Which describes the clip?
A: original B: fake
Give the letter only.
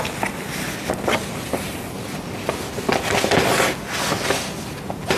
A